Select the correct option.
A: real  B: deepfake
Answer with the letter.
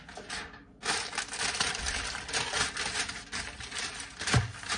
A